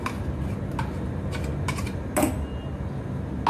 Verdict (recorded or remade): recorded